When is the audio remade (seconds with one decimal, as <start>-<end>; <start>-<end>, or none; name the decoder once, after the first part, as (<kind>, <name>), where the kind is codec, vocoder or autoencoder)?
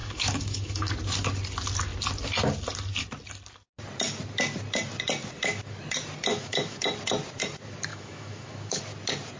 0.0-0.9 (autoencoder, DAC-VAE); 6.3-6.9; 7.9-8.8